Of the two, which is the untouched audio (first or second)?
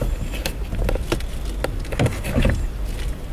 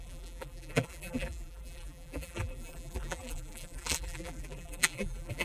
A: first